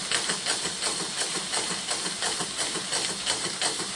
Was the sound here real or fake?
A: real